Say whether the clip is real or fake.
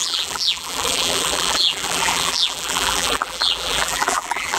fake